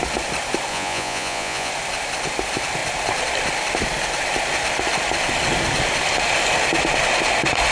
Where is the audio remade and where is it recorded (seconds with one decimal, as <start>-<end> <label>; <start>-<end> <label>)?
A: 0.0-0.7 recorded; 0.7-1.7 remade; 1.7-7.7 recorded